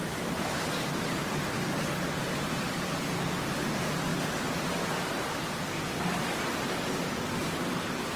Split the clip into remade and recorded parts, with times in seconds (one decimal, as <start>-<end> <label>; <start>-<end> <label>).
0.0-0.6 remade; 0.6-8.2 recorded